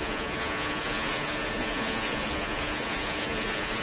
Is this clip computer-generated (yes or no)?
yes